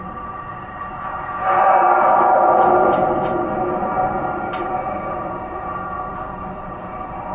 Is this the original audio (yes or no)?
no